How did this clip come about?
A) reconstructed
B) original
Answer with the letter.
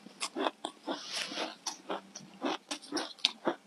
B